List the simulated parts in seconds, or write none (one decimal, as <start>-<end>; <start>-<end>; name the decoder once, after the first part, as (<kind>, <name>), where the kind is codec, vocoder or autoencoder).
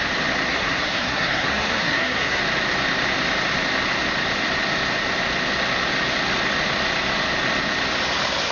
0.5-2.4 (codec, SNAC)